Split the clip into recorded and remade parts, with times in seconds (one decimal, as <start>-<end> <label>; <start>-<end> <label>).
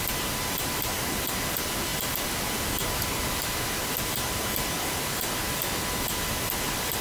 0.0-7.0 recorded